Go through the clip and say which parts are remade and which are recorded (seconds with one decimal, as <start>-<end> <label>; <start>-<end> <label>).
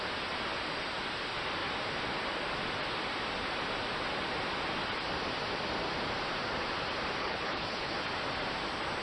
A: 0.0-7.2 recorded; 7.2-8.0 remade; 8.0-9.0 recorded